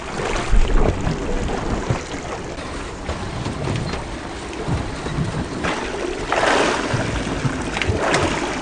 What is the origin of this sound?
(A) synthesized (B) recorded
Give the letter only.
B